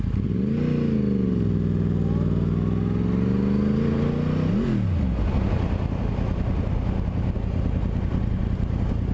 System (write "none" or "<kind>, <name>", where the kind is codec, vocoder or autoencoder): none